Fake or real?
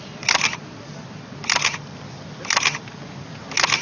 real